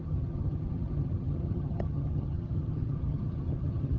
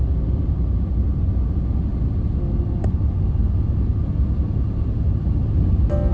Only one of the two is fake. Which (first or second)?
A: first